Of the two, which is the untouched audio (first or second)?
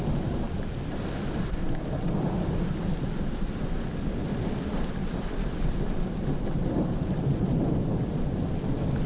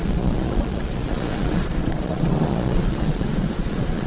first